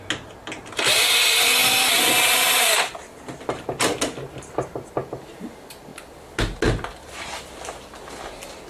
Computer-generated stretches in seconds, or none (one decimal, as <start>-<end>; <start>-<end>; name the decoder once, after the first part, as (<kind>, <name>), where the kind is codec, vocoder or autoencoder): none